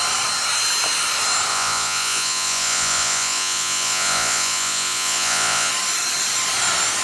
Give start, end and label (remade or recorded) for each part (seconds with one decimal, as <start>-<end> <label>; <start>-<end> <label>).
0.0-1.5 recorded; 1.5-5.7 remade; 5.7-7.0 recorded